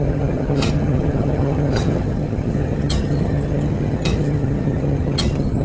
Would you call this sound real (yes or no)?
no